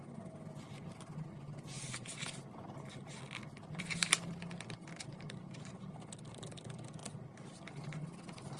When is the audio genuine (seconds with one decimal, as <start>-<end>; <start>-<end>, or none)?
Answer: 0.0-8.6